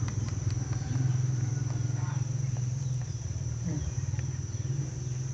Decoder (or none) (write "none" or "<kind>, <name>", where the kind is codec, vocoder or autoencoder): vocoder, BigVGAN v2